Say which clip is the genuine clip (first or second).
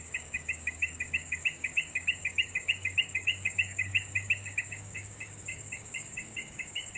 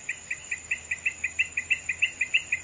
second